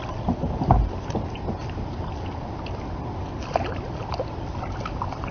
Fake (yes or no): no